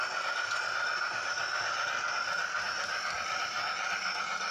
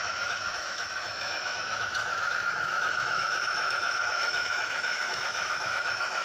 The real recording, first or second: first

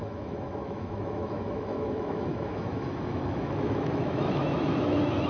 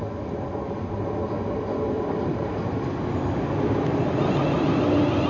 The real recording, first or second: second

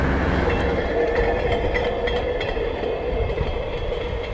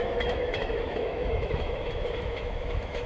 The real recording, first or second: first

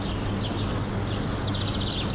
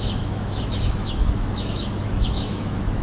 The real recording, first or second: first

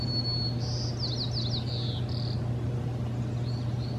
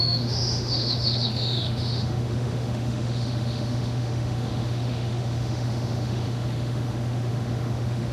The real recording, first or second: first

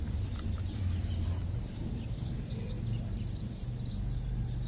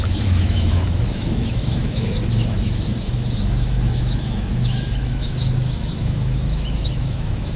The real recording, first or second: first